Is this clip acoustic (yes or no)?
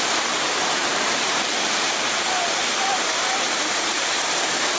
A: no